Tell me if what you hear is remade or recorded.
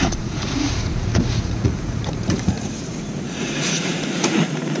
remade